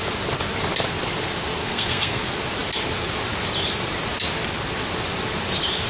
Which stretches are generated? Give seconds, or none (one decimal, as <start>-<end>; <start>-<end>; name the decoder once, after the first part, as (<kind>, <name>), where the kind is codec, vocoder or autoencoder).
1.6-2.2 (codec, SNAC)